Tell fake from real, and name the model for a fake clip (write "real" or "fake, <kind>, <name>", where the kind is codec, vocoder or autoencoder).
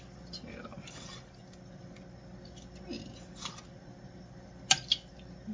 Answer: real